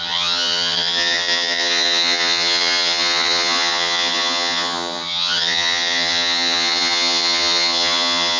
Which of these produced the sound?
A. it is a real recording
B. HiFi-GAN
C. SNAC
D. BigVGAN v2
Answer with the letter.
B